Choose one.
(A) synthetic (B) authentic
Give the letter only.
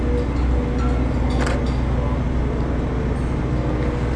B